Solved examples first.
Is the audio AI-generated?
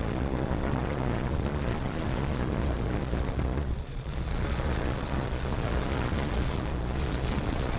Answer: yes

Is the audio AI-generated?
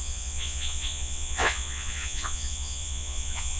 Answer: yes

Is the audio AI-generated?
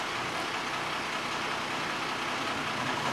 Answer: no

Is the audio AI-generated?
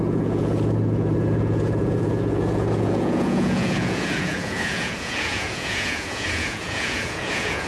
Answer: yes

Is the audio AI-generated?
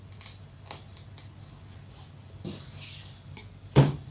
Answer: no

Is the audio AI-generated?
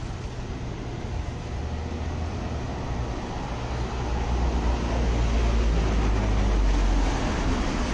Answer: no